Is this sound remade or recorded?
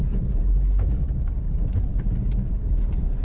recorded